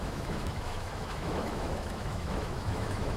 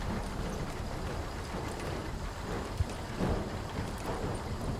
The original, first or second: second